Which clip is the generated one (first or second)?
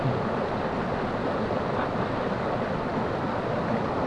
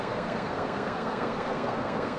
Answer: second